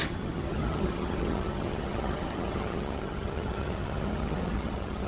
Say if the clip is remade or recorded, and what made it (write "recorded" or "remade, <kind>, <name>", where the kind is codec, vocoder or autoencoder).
remade, vocoder, HiFi-GAN